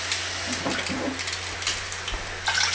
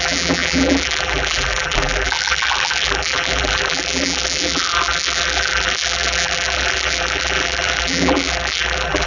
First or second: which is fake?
second